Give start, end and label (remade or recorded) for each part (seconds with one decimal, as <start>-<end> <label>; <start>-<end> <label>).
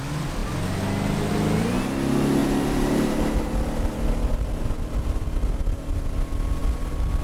0.0-2.4 recorded; 2.4-4.3 remade; 4.3-6.6 recorded; 6.6-7.2 remade